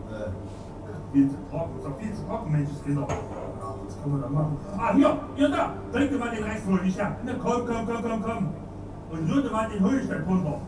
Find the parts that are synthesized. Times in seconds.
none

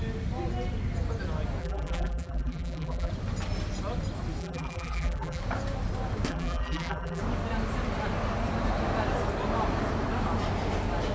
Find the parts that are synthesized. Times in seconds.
1.6-3.1; 4.4-5.4; 6.3-7.2

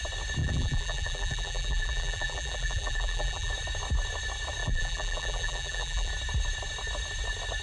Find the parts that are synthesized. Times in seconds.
0.4-3.5; 4.6-6.1

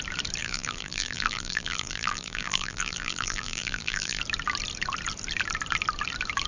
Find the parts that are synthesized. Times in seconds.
0.4-4.2

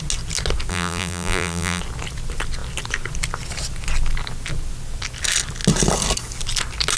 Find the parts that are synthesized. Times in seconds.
0.7-1.8

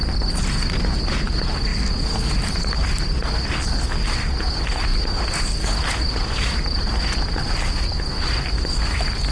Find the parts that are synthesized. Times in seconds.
none